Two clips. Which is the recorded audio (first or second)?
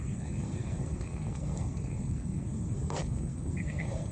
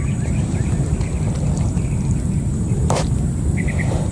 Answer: second